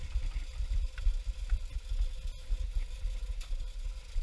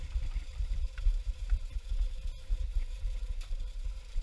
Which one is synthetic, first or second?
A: second